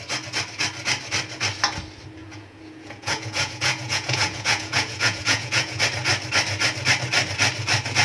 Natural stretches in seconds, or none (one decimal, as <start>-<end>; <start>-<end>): 0.0-2.2; 5.8-8.0